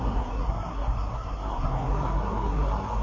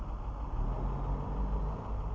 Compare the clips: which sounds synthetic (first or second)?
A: first